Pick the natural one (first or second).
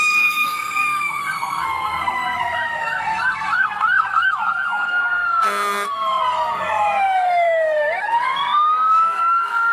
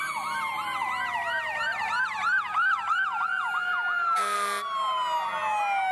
second